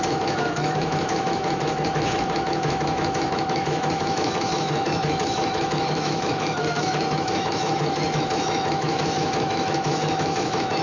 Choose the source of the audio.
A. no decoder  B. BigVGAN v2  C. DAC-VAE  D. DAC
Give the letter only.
C